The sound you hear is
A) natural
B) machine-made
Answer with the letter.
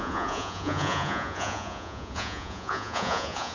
B